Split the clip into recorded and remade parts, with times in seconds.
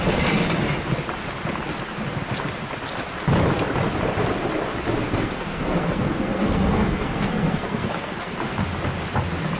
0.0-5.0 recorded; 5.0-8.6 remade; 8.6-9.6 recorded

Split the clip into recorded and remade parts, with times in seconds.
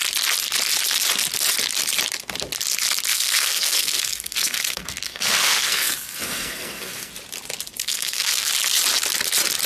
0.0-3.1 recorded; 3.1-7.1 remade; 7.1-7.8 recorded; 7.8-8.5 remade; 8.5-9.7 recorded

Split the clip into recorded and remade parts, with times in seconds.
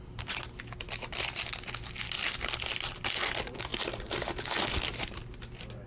0.0-5.9 recorded